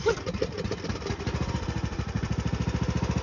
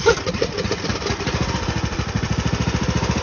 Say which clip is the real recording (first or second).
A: first